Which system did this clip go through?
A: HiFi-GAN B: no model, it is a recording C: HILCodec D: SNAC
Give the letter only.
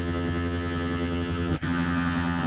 A